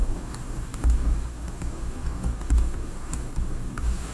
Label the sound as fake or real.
fake